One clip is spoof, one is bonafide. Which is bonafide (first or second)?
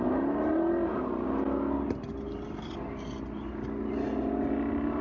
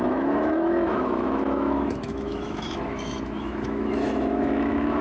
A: first